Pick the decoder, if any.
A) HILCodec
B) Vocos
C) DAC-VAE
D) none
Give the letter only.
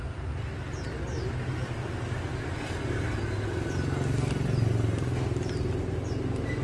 D